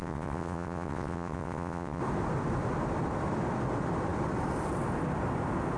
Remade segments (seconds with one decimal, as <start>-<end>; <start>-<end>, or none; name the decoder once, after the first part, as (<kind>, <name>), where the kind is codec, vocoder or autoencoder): 0.0-2.0 (vocoder, WaveNeXt)